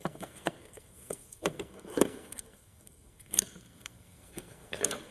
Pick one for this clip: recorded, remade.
remade